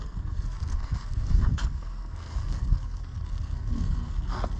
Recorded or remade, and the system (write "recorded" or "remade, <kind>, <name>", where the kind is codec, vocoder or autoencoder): remade, codec, SNAC